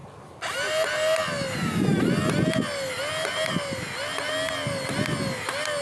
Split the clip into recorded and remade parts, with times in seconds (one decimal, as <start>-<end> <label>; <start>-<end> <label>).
0.0-5.8 recorded